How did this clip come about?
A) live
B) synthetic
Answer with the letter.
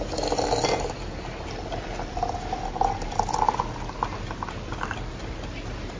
A